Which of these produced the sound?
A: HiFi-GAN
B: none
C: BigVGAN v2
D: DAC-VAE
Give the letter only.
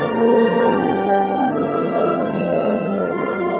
A